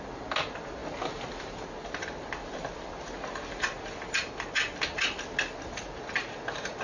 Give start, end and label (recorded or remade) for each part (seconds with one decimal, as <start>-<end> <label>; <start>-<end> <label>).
0.0-6.8 recorded